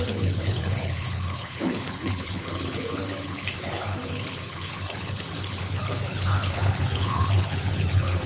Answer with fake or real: fake